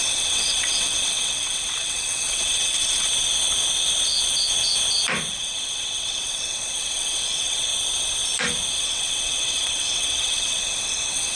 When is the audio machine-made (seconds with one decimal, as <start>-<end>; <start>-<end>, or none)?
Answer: 0.0-3.1; 5.3-7.7; 8.7-11.4